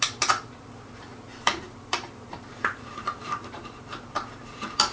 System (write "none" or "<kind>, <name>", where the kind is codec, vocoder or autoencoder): vocoder, BigVGAN v2